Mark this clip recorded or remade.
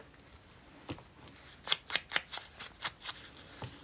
recorded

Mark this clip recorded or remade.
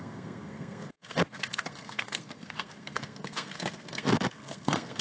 remade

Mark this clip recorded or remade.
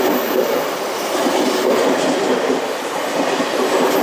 recorded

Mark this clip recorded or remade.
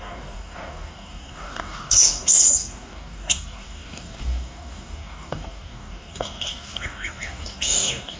remade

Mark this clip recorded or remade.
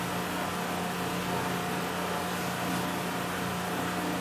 recorded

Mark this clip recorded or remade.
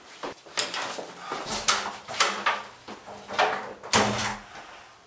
recorded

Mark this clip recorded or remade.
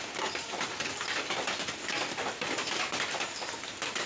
recorded